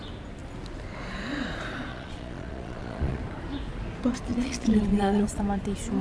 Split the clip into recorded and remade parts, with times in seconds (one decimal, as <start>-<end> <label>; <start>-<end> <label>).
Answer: 0.0-1.9 recorded; 1.9-3.2 remade; 3.2-4.3 recorded; 4.3-5.4 remade; 5.4-6.0 recorded